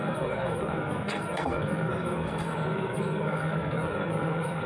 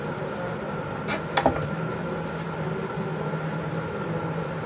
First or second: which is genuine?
second